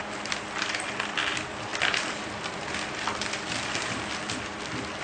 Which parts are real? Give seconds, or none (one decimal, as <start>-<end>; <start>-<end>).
0.0-5.0